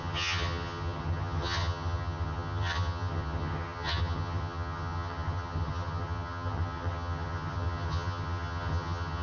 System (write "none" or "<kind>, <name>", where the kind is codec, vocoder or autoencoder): vocoder, HiFi-GAN